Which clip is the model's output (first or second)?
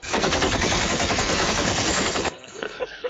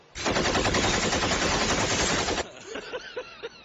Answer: first